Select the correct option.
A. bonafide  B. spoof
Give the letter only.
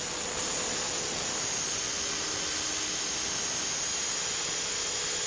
A